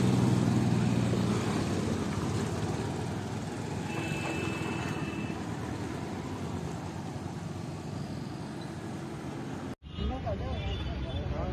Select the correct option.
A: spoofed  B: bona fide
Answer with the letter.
B